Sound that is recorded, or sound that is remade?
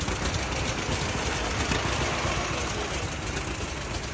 recorded